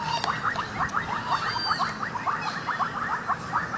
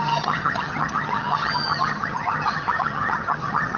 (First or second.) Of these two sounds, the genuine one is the first